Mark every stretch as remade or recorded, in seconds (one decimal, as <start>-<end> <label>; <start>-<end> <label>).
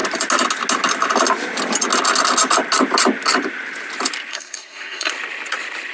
0.0-4.3 recorded; 4.3-5.1 remade; 5.1-5.9 recorded